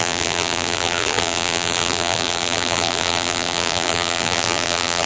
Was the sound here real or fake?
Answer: fake